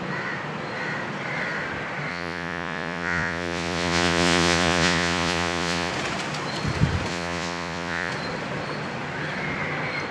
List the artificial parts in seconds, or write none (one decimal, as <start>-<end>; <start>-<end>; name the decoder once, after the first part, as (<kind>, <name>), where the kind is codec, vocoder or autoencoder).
2.1-5.9 (vocoder, Vocos); 7.1-8.1

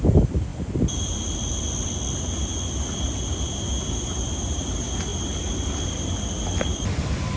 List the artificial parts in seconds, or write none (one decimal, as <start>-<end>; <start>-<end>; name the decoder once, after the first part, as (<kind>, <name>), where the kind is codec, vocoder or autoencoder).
none